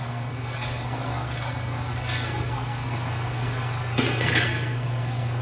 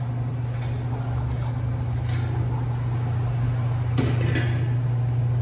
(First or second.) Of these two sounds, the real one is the second